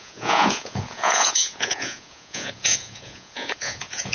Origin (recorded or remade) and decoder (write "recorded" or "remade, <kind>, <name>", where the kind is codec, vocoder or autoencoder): remade, vocoder, Vocos